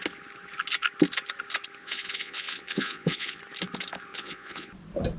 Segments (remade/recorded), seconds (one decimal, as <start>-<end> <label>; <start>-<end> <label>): 0.0-1.8 recorded; 1.8-3.4 remade; 3.4-4.1 recorded; 4.1-4.7 remade; 4.7-5.2 recorded